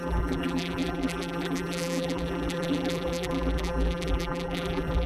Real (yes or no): no